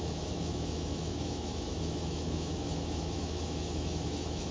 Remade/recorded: remade